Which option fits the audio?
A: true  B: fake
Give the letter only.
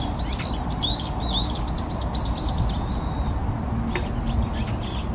A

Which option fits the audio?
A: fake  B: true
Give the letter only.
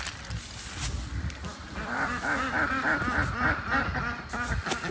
B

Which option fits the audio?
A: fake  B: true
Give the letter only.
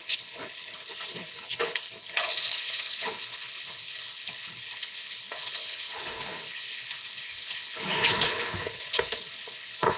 A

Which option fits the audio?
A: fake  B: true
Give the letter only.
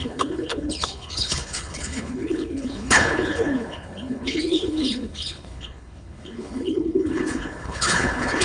A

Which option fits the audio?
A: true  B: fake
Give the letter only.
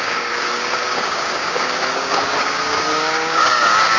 B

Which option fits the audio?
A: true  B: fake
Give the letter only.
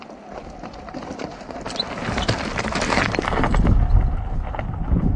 B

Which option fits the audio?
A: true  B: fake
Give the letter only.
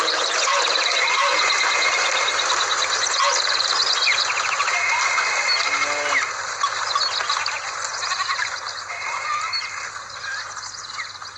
A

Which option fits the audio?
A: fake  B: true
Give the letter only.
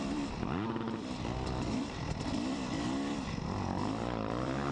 A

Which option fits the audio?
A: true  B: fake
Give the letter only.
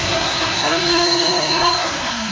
B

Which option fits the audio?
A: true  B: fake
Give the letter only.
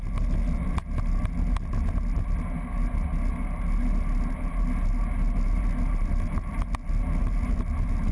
A